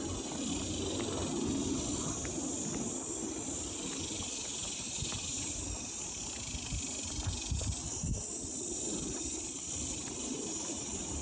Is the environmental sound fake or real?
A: real